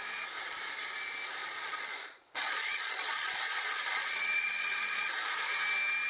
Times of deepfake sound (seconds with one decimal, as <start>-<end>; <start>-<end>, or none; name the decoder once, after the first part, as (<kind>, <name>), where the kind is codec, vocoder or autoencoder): 1.4-5.1 (vocoder, Vocos)